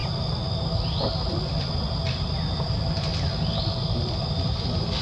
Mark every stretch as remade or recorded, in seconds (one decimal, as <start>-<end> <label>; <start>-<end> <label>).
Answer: 0.0-5.0 recorded